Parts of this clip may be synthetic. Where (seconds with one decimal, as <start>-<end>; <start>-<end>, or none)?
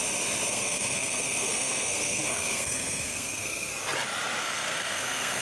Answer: 0.5-3.7; 4.4-5.4